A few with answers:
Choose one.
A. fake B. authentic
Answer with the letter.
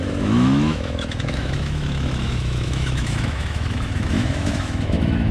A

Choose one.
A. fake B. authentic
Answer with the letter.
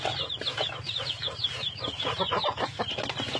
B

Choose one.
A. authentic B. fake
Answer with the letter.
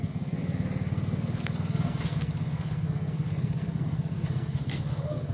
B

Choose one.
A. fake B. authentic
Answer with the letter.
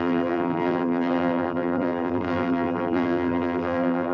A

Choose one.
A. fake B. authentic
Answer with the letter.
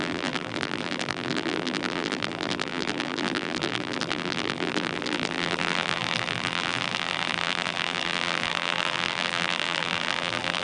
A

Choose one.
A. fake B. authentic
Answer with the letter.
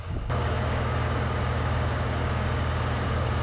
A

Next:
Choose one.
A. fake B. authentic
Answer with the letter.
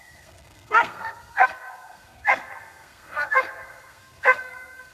A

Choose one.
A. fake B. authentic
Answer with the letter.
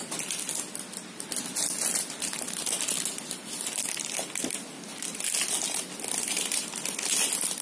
B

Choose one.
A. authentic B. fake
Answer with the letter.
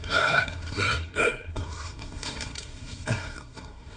B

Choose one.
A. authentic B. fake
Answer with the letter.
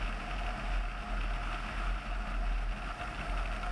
A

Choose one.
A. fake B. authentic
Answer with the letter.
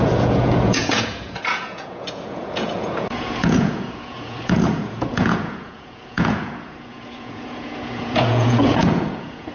A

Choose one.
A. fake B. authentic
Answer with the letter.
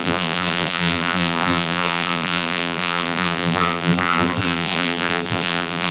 A